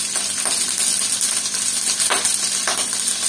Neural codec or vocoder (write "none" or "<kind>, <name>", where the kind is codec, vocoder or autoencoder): none